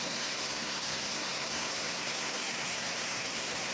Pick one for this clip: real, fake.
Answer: fake